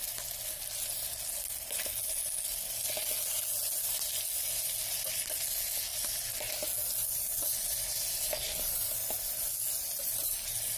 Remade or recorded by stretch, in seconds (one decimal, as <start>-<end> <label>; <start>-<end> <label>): 0.0-10.8 recorded